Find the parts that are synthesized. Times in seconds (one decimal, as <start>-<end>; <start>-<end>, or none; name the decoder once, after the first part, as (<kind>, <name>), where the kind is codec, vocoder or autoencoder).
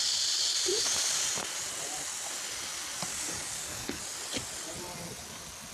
3.1-4.0 (codec, DAC)